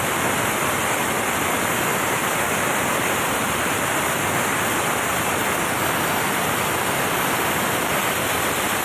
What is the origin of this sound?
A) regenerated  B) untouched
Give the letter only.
B